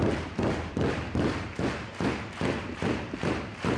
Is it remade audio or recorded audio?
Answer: remade